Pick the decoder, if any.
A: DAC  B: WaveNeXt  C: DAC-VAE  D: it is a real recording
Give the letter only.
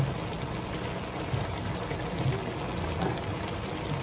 D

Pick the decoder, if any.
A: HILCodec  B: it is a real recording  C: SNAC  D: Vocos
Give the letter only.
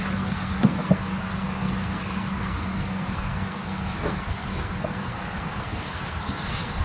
C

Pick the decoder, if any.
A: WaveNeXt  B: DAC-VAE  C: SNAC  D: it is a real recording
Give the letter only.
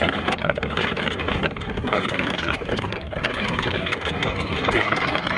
C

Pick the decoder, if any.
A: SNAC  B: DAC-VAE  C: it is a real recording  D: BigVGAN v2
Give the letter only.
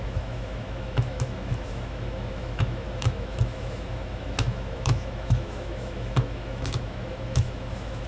B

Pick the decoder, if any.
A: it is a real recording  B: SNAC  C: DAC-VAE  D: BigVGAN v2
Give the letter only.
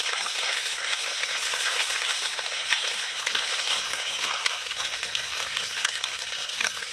B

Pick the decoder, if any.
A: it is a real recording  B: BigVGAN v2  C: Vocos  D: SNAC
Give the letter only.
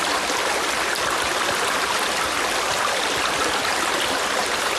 A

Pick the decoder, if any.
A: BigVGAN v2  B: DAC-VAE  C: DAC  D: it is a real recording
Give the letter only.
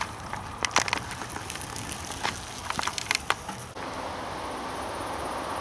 D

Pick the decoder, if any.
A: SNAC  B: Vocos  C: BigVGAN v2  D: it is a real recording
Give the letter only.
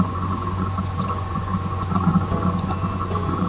B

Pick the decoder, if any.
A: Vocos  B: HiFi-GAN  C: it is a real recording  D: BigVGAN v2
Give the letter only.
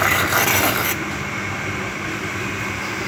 C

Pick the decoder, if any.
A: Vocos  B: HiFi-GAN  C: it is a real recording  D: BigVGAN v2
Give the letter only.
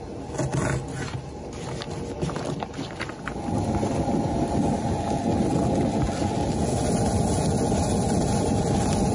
C